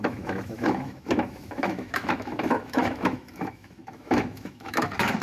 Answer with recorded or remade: remade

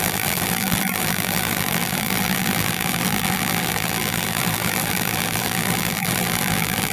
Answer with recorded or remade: remade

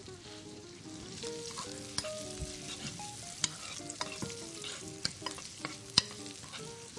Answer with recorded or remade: recorded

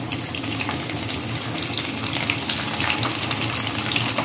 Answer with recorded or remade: recorded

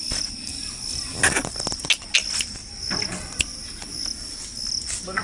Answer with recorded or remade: recorded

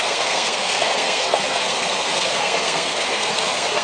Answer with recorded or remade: remade